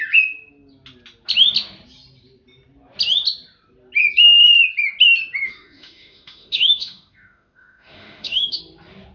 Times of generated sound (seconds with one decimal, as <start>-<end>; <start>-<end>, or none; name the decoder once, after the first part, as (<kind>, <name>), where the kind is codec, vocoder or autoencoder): 5.4-8.6 (autoencoder, DAC-VAE)